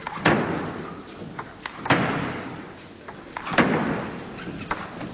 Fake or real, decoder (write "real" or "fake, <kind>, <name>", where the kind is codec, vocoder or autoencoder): real